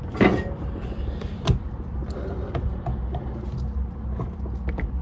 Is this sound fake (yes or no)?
no